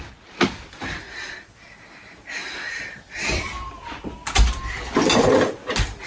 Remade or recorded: recorded